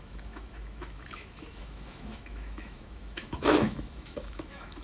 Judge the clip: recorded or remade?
remade